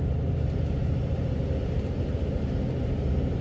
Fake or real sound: fake